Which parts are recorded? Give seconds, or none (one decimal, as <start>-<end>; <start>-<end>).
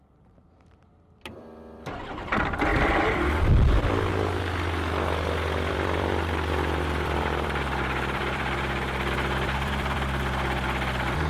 2.7-5.7